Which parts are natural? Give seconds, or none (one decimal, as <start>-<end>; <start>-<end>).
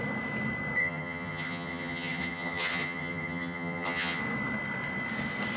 0.0-0.8; 4.2-5.6